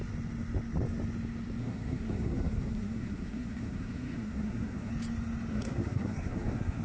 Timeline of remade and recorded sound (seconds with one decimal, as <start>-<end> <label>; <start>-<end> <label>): 0.0-1.6 recorded; 1.6-4.9 remade; 4.9-5.5 recorded; 5.5-6.8 remade